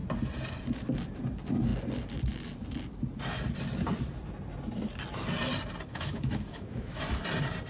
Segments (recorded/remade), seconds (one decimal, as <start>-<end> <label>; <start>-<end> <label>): 0.0-5.9 recorded; 5.9-7.0 remade; 7.0-7.7 recorded